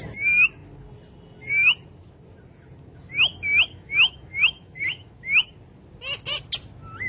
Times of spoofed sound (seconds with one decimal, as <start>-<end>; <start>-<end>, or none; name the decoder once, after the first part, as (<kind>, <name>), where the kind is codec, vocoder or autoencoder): 3.3-5.4 (autoencoder, DAC-VAE)